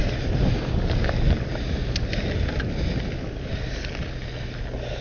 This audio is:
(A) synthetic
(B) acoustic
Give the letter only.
B